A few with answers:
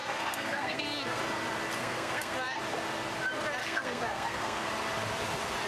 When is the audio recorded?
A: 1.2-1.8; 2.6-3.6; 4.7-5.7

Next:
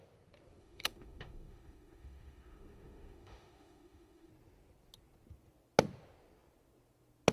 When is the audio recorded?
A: 0.0-0.6; 4.3-7.3

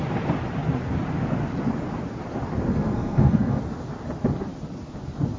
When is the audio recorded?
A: 0.0-2.7; 3.6-5.4

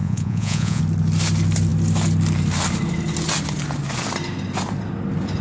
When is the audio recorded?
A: 0.8-5.4